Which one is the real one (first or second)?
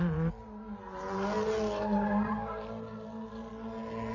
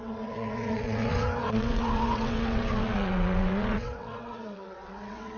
first